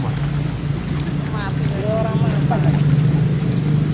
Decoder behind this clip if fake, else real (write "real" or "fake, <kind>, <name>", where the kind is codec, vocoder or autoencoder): real